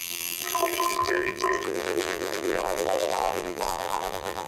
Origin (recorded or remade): remade